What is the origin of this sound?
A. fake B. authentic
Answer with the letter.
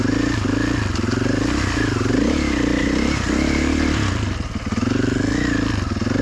B